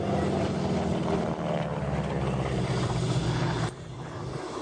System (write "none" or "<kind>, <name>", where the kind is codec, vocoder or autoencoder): none